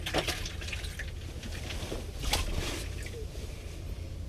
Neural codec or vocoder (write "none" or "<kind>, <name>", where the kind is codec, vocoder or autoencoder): none